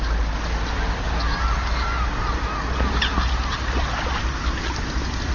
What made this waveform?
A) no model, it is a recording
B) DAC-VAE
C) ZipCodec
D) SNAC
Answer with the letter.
A